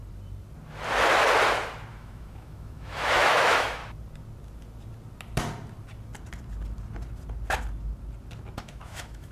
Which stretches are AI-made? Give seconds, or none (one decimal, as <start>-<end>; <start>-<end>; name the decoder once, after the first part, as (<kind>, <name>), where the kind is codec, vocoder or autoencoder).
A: 1.9-3.8 (autoencoder, DAC-VAE); 8.6-9.3